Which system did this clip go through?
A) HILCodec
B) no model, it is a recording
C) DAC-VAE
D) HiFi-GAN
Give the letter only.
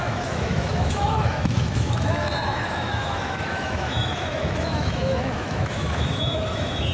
C